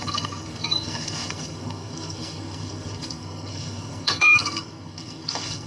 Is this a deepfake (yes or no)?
yes